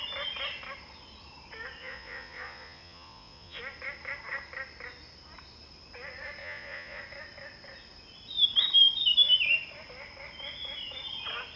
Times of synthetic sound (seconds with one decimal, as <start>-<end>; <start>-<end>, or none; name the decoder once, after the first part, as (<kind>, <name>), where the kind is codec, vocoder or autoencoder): 1.8-3.6 (vocoder, Vocos); 6.4-7.0